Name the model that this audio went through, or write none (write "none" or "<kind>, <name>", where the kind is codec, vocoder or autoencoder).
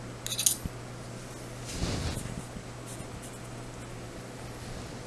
none